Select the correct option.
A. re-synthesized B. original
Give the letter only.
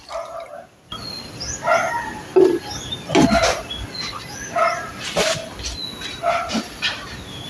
B